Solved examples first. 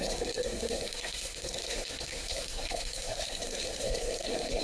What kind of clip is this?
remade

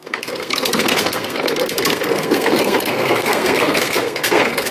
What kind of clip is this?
remade